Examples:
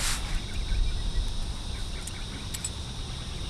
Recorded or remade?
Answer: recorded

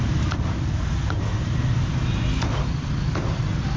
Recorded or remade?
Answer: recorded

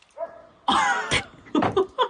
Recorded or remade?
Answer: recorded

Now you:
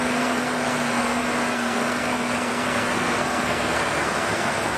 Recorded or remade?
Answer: remade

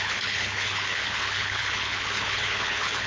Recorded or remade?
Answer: remade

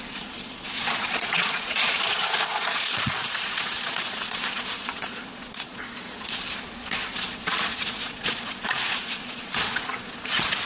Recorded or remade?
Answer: remade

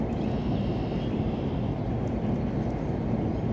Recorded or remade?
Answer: recorded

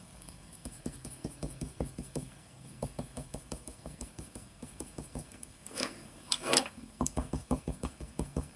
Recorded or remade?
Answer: remade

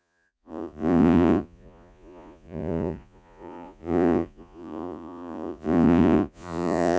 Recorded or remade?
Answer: remade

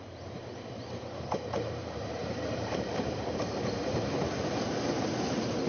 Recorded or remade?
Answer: remade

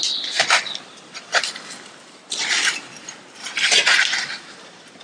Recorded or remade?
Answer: recorded